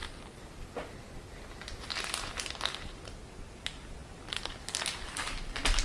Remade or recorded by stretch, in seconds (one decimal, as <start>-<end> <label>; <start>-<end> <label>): 0.0-5.8 recorded